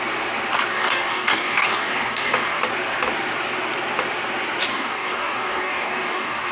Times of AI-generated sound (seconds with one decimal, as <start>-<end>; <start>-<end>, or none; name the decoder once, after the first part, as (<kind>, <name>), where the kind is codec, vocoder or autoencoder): 0.7-2.6 (codec, DAC); 4.7-6.5